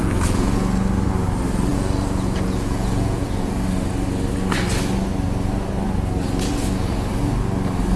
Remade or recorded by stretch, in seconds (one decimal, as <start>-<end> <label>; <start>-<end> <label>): 0.0-0.8 remade; 0.8-1.7 recorded; 1.7-3.5 remade; 3.5-8.0 recorded